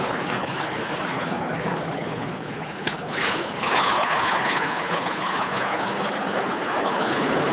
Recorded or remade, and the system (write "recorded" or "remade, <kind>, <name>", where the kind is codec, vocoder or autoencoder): remade, codec, HILCodec